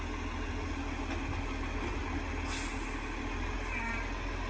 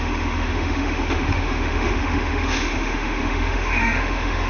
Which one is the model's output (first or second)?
second